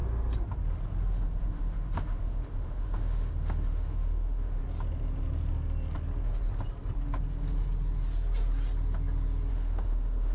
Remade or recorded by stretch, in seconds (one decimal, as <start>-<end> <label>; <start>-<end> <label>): 0.0-1.0 recorded; 1.0-4.6 remade; 4.6-9.5 recorded; 9.5-10.3 remade